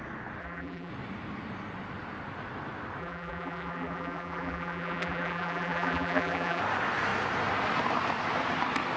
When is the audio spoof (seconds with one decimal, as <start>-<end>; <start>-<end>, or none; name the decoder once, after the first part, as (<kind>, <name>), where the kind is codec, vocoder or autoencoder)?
0.4-0.9 (vocoder, BigVGAN v2); 3.0-6.6